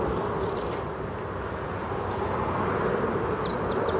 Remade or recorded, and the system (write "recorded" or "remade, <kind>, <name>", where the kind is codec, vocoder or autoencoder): recorded